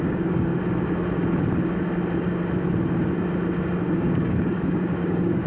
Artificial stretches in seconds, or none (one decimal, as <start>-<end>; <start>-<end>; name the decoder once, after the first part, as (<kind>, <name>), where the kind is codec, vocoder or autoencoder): 0.0-0.5 (codec, DAC); 3.8-5.5

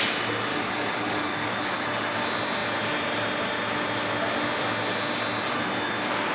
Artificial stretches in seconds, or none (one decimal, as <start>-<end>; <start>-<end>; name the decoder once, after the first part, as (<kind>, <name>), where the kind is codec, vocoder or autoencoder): 0.5-1.6 (codec, DAC)

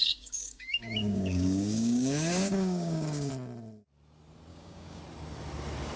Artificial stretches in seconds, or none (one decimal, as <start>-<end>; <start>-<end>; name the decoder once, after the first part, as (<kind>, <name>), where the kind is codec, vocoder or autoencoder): 0.0-3.3 (codec, DAC); 4.5-5.0